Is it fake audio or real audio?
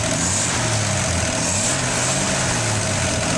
real